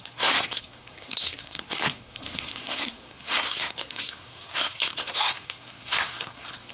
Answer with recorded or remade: remade